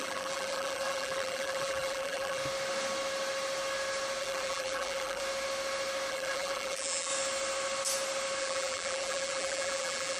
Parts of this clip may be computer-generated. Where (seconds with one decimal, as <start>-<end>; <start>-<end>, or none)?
0.0-2.4; 4.2-5.2; 6.1-7.1; 8.4-10.2

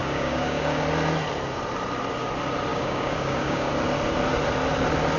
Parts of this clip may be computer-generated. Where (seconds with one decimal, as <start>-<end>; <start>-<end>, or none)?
0.0-0.8; 2.7-3.7

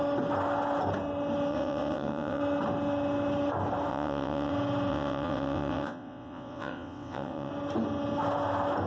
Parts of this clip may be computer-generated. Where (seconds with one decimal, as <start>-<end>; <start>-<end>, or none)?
1.5-2.4; 3.9-4.5; 4.9-7.5

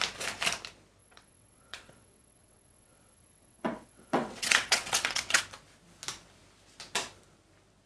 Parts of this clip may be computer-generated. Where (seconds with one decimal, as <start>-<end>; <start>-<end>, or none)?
1.0-5.4

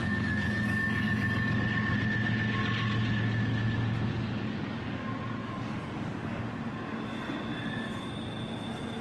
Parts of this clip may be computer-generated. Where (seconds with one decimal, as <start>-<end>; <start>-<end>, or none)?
0.0-1.6; 4.7-6.4

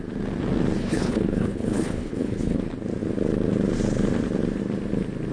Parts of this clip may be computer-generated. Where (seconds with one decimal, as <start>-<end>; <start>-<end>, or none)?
0.8-2.6